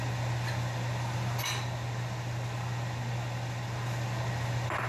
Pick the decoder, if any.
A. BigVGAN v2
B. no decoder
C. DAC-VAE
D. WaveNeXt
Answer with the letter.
B